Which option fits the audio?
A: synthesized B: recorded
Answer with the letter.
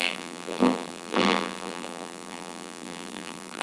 A